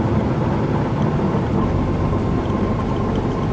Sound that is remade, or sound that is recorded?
recorded